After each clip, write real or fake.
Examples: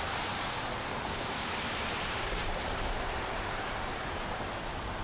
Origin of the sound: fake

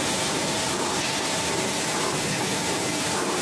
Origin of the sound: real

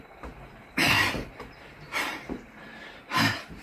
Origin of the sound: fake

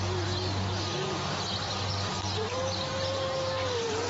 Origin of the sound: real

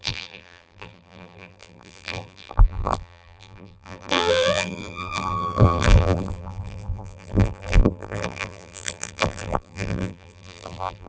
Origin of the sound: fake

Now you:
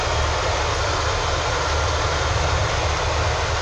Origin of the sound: real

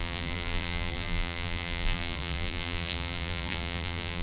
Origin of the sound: fake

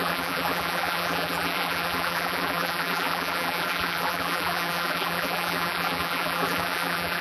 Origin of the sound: fake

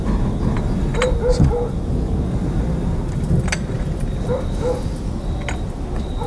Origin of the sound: real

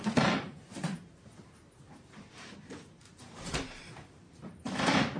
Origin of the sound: fake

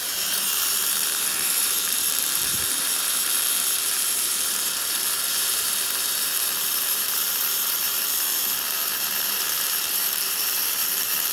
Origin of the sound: fake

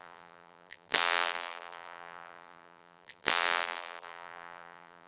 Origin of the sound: fake